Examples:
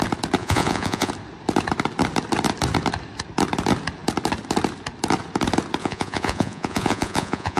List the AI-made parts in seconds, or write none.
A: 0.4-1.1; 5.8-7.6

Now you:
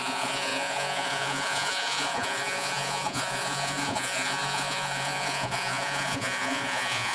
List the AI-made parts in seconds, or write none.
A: 0.0-7.1

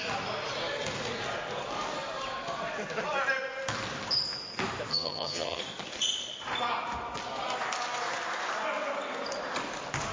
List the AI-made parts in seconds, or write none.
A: 4.9-5.6

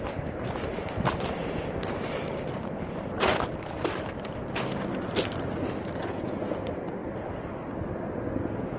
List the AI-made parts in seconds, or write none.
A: 6.1-6.6

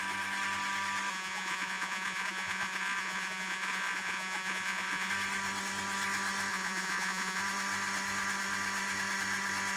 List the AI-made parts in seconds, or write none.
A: 1.1-5.1; 6.5-7.4

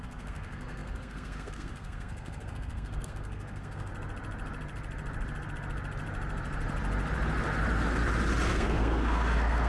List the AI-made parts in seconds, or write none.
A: 0.0-3.9; 8.5-9.7

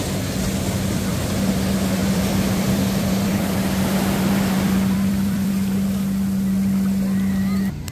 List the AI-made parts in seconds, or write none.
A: 2.0-5.5